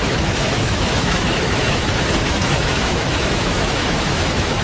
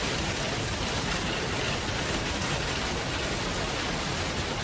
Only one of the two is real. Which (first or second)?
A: second